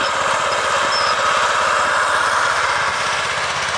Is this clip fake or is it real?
real